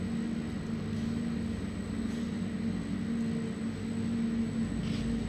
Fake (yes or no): no